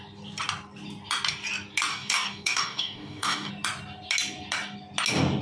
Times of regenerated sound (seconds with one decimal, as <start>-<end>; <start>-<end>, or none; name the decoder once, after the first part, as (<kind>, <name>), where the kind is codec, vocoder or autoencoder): 1.9-3.5 (codec, DAC)